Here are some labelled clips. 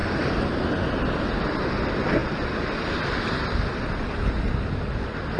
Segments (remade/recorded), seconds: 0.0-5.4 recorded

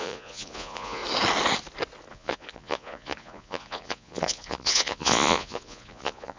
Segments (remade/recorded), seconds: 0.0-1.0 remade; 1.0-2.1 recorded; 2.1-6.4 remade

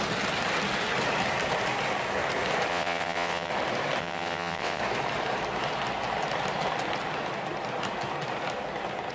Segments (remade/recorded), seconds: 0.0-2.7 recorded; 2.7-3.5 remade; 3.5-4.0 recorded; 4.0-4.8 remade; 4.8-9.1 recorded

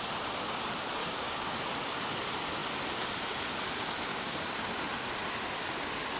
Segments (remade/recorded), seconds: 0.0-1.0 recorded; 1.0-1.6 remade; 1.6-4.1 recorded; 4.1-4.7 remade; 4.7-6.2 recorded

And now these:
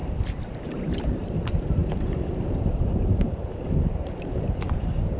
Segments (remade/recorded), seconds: 0.0-0.6 recorded; 0.6-5.2 remade

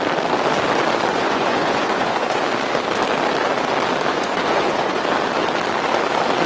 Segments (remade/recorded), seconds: 0.0-1.1 recorded; 1.1-2.4 remade; 2.4-4.1 recorded; 4.1-5.0 remade; 5.0-6.5 recorded